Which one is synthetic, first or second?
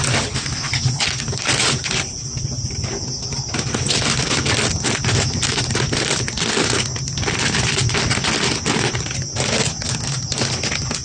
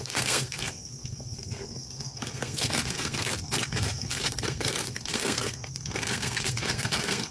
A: second